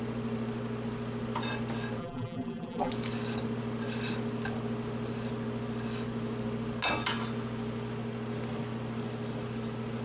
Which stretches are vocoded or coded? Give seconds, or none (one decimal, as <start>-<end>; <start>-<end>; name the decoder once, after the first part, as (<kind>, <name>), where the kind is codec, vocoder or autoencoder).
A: 2.0-2.9 (vocoder, BigVGAN v2)